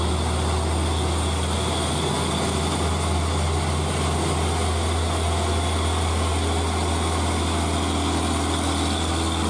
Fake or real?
real